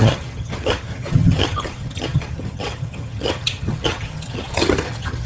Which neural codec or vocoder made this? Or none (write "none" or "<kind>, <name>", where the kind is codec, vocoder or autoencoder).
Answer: vocoder, HiFi-GAN